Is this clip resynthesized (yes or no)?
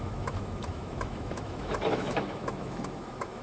yes